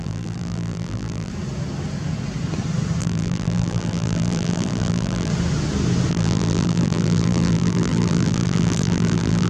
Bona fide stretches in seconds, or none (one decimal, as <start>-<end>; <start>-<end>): 1.3-3.0; 5.3-6.1

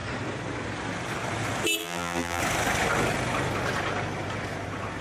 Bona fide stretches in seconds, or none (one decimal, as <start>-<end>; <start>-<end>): 0.0-1.8; 2.4-5.0

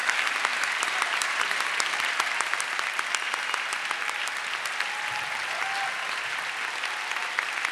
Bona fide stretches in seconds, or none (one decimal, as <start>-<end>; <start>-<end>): 3.0-7.7

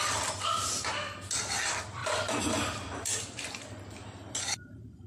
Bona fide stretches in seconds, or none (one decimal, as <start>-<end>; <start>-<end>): 0.0-2.0; 3.8-5.1

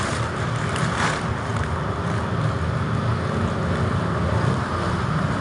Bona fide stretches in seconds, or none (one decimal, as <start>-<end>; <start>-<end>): 1.5-4.3

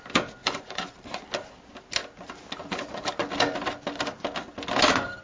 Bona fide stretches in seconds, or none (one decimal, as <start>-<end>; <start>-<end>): 0.0-0.4; 1.2-5.2

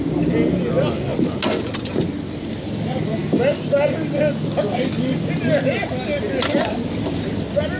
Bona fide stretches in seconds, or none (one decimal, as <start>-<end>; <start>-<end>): 0.0-7.8

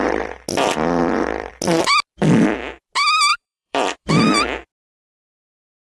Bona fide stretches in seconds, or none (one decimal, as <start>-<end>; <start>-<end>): 0.0-1.0; 1.5-3.3; 4.1-5.8